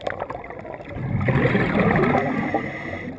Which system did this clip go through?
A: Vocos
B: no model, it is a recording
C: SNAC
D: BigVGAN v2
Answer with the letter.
B